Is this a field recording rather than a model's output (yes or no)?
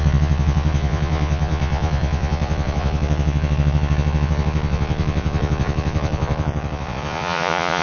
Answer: no